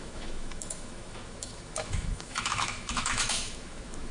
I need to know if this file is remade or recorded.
remade